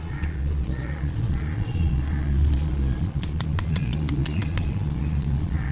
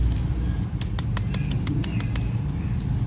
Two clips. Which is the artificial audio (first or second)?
first